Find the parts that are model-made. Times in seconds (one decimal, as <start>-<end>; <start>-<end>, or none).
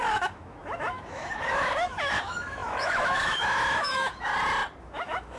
0.0-4.3; 4.8-5.4